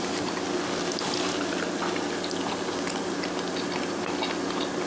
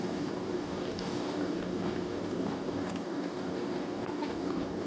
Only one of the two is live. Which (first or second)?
first